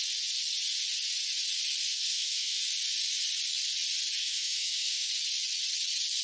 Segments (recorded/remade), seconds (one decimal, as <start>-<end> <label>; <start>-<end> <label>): 0.0-1.9 recorded; 1.9-2.6 remade; 2.6-4.2 recorded; 4.2-5.1 remade; 5.1-6.2 recorded